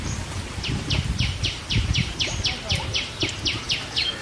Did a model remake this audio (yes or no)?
yes